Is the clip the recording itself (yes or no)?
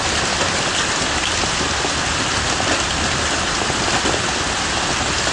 yes